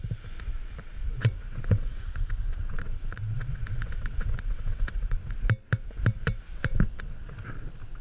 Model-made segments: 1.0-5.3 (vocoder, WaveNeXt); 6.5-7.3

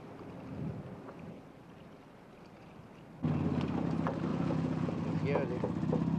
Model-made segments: 4.3-4.9 (vocoder, Vocos)

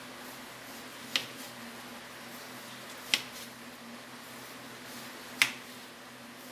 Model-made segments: none

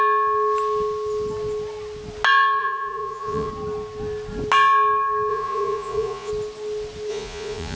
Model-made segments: 2.6-3.5 (vocoder, Vocos); 5.3-6.3; 7.1-7.8